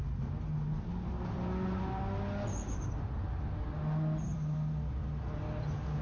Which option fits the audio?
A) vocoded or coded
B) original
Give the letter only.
B